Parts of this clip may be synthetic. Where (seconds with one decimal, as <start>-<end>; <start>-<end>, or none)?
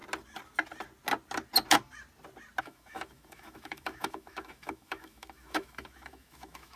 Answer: 2.6-6.8